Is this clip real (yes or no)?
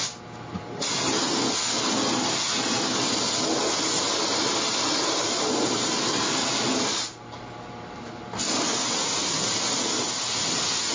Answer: yes